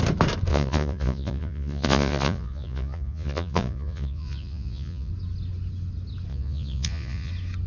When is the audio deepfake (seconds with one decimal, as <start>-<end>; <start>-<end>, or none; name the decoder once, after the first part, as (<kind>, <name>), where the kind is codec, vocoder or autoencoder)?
0.5-5.1 (vocoder, Vocos); 6.3-7.3